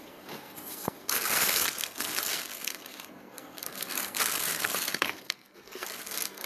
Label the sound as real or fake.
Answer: fake